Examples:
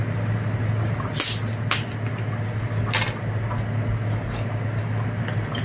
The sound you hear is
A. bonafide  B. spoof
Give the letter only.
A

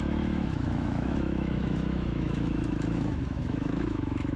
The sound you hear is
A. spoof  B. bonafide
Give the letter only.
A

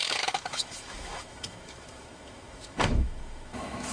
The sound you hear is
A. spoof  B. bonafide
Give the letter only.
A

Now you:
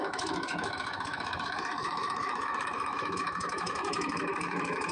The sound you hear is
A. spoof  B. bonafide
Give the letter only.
A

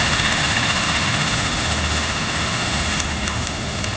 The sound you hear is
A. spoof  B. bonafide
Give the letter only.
A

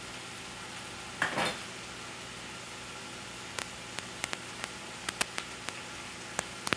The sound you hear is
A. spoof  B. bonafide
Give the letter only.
B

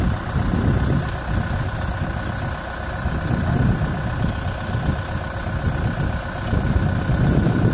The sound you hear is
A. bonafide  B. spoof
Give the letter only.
A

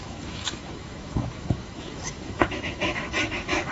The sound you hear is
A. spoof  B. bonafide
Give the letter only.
A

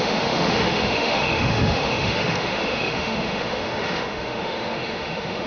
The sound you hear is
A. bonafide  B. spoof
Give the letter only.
B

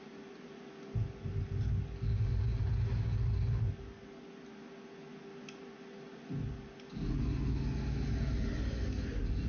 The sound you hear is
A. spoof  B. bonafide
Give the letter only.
B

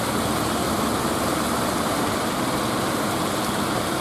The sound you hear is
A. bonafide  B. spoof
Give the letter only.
A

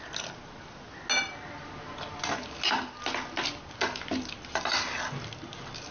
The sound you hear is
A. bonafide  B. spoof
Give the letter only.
A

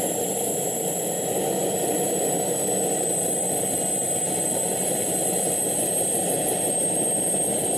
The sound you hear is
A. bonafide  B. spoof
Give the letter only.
A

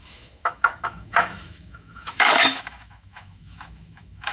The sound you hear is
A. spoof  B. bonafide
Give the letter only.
A